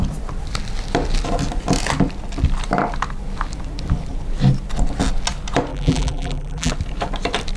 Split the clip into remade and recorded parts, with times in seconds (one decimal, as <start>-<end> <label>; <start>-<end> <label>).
0.0-5.7 recorded; 5.7-6.7 remade; 6.7-7.6 recorded